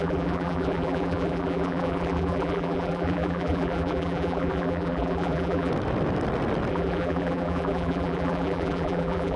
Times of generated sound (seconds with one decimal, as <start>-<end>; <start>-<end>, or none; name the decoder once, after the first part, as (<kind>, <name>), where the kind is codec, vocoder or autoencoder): 0.0-5.7 (vocoder, BigVGAN v2); 6.7-9.4